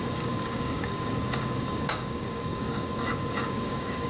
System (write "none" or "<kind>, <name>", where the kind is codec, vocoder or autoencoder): codec, DAC